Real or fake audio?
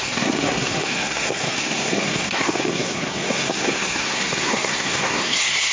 fake